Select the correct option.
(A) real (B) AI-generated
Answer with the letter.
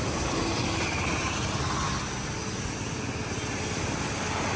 A